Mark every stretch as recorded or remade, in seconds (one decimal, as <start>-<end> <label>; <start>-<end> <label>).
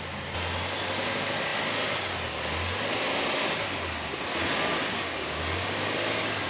0.0-4.8 recorded; 4.8-5.4 remade; 5.4-6.5 recorded